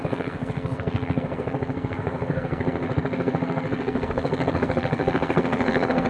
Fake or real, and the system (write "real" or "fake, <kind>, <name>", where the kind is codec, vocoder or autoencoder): fake, codec, SNAC